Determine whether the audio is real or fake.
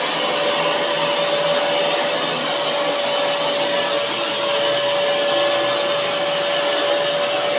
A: real